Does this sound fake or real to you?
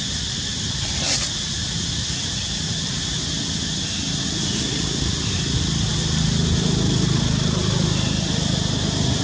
real